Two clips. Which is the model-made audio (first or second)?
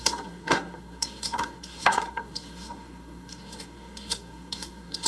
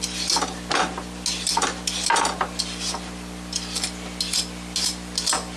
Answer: first